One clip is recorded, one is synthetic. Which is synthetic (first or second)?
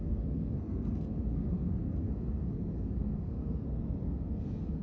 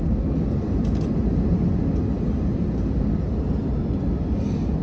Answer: first